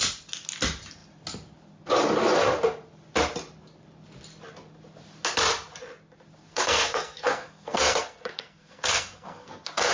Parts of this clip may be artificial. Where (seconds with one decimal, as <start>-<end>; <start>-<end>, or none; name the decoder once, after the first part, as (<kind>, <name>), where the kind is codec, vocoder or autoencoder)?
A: 6.4-9.9 (codec, SNAC)